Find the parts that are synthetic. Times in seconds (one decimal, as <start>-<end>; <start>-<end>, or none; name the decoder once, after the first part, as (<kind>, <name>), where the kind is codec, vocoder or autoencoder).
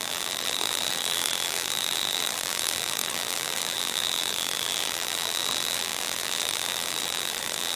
0.0-7.8 (vocoder, BigVGAN v2)